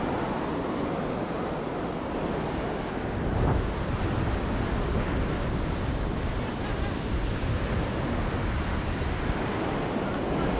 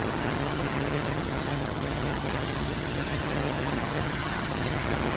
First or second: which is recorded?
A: first